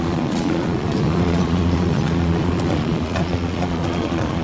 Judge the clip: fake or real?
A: fake